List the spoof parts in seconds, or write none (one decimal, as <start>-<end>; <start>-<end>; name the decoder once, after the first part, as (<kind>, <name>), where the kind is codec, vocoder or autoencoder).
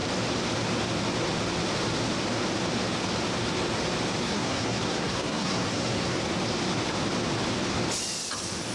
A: 4.2-6.2 (codec, SNAC)